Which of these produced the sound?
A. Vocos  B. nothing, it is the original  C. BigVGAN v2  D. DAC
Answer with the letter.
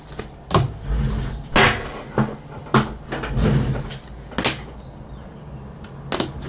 B